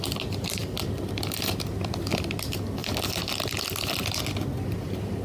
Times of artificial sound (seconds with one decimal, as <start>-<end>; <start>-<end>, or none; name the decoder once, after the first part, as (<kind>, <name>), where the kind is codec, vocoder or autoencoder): none

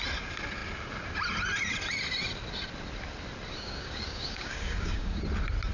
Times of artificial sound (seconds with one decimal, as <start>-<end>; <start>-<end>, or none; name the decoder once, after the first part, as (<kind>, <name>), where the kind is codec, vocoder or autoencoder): 3.5-5.2 (codec, DAC)